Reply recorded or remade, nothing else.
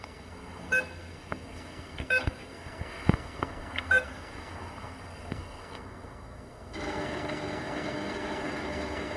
remade